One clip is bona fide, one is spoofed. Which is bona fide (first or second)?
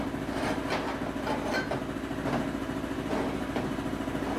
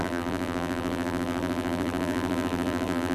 first